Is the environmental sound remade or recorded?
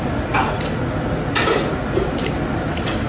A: recorded